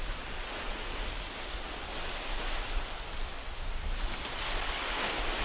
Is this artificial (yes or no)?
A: no